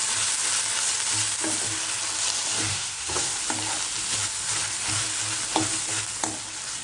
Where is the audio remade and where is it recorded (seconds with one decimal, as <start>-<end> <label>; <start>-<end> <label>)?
0.0-2.7 recorded; 2.7-3.4 remade; 3.4-6.8 recorded